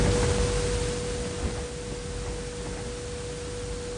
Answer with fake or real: real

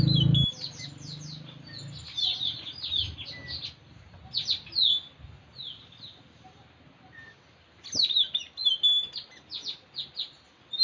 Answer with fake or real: real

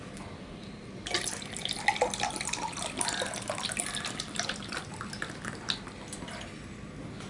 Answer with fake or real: real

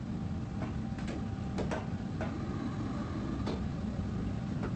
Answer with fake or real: real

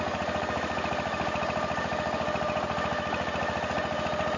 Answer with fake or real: real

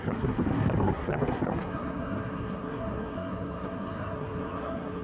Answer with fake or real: fake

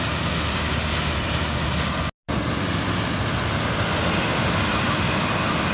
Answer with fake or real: real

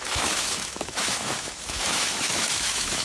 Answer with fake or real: fake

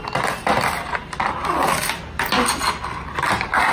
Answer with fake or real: real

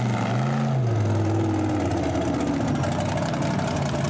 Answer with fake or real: real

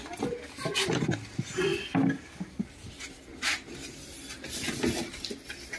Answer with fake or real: real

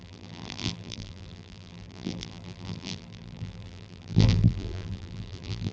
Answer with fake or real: fake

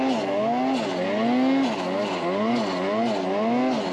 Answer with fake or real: real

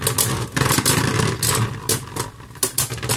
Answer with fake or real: real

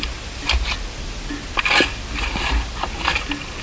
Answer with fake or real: real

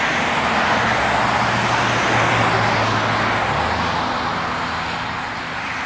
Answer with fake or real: real